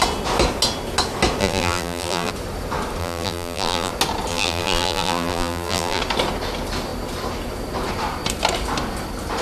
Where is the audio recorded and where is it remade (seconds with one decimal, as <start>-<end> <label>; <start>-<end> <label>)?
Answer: 0.0-1.4 recorded; 1.4-2.3 remade; 2.3-3.0 recorded; 3.0-3.9 remade; 3.9-4.3 recorded; 4.3-6.0 remade; 6.0-9.4 recorded